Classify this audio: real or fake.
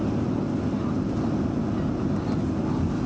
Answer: real